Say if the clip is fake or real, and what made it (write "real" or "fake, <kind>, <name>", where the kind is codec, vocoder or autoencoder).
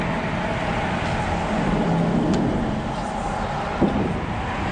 real